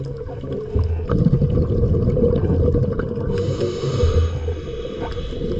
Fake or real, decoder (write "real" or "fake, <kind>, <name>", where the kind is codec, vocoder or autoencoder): real